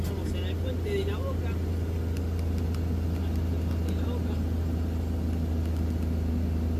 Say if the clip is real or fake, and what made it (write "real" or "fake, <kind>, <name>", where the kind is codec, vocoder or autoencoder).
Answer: real